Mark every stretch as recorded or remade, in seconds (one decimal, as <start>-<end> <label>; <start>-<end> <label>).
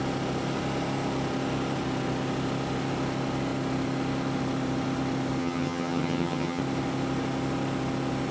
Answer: 0.0-5.4 recorded; 5.4-6.6 remade; 6.6-8.3 recorded